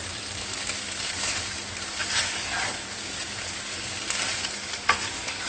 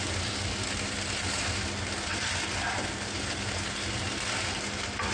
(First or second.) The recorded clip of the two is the second